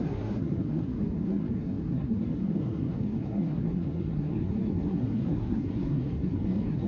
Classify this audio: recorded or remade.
remade